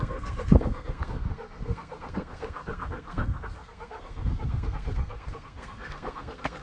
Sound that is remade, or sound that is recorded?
remade